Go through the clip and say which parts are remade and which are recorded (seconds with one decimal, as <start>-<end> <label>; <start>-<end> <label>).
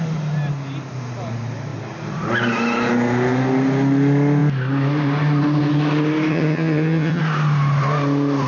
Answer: 0.0-6.3 recorded; 6.3-7.2 remade; 7.2-8.5 recorded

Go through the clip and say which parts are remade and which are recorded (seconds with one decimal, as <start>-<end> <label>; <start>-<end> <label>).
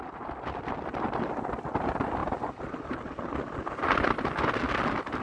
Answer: 0.0-5.2 recorded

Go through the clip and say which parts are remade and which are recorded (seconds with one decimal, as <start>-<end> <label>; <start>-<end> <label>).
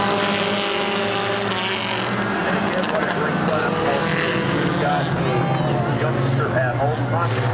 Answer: 0.0-2.4 recorded; 2.4-4.3 remade; 4.3-7.5 recorded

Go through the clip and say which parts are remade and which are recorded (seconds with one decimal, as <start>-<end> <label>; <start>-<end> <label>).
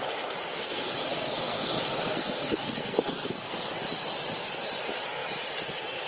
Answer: 0.0-0.5 recorded; 0.5-3.7 remade; 3.7-6.1 recorded